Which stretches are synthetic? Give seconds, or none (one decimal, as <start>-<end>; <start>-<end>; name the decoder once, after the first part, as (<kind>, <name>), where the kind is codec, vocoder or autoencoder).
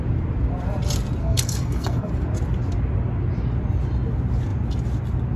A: 1.2-2.1 (codec, SNAC)